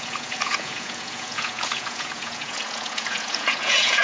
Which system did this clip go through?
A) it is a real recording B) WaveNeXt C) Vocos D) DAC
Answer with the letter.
C